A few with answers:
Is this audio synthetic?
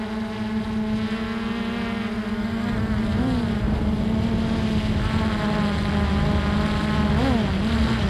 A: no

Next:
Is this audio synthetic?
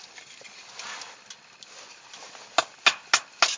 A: no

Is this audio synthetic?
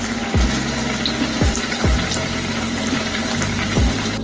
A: yes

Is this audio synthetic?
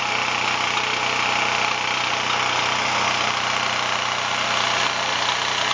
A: no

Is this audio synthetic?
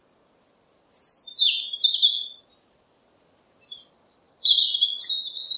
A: no